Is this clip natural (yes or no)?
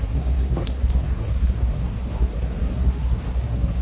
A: no